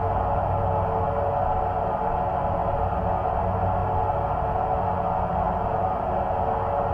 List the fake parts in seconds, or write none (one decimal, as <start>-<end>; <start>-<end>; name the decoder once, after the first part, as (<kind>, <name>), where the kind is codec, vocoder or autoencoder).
none